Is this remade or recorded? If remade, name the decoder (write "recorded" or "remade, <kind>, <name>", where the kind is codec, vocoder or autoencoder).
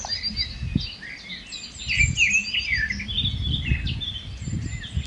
recorded